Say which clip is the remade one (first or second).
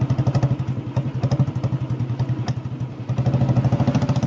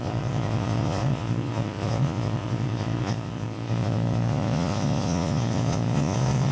second